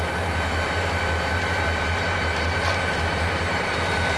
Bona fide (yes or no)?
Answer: yes